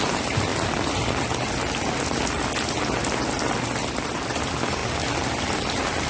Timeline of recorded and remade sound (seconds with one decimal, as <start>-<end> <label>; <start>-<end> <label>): 0.0-6.1 recorded